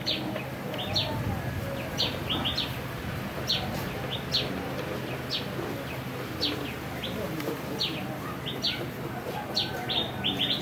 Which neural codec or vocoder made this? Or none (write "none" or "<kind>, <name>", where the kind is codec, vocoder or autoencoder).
none